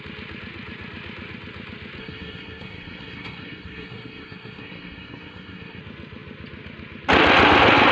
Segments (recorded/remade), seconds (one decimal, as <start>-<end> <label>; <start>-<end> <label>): 0.0-2.0 recorded; 2.0-5.8 remade; 5.8-7.9 recorded